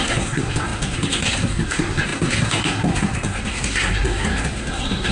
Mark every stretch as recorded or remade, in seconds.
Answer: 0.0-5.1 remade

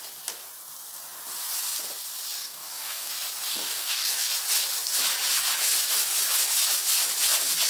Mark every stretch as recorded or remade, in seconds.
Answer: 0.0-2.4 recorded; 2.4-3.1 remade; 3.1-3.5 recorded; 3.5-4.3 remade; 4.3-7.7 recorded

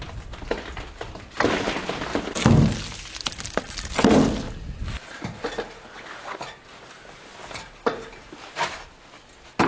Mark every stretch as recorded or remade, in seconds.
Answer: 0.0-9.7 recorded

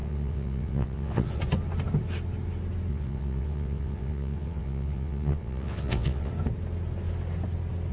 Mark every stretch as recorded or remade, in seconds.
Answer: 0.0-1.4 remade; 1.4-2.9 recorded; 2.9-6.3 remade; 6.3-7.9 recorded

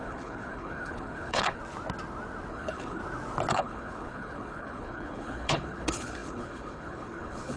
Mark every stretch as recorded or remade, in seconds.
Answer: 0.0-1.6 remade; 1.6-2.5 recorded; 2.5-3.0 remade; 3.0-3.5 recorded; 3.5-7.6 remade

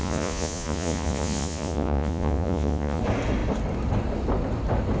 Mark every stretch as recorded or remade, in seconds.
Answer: 0.0-3.0 remade; 3.0-5.0 recorded

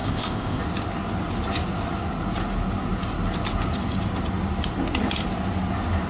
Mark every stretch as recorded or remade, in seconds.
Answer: 0.0-0.6 remade; 0.6-6.1 recorded

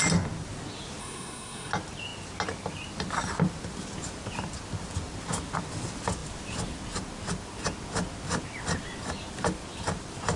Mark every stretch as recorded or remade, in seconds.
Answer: 0.0-1.0 recorded; 1.0-1.7 remade; 1.7-10.4 recorded